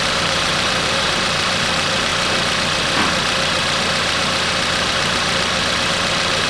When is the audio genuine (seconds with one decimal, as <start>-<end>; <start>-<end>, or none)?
2.1-5.9